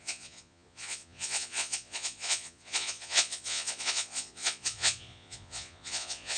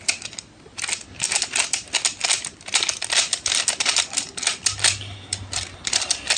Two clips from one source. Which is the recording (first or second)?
second